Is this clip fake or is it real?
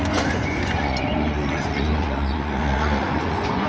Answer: fake